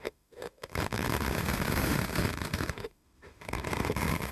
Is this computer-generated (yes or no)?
yes